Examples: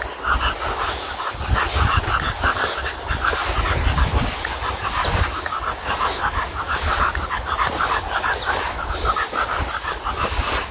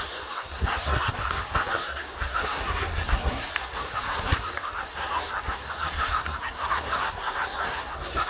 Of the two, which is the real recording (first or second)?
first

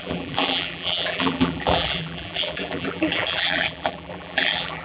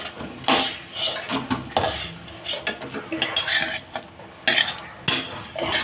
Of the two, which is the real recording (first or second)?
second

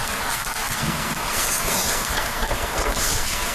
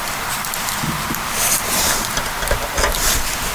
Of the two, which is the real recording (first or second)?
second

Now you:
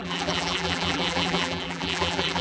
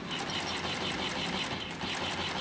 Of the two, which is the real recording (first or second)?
second